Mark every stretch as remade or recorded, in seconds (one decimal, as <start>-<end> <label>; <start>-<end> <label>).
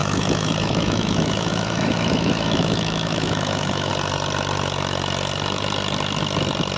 0.0-3.9 remade; 3.9-6.8 recorded